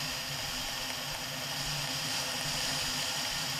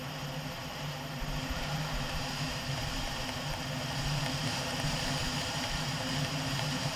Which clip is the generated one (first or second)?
second